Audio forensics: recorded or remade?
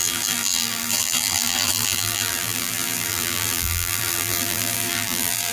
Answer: remade